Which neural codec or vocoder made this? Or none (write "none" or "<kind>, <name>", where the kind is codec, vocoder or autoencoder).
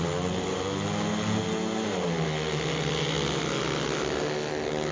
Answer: none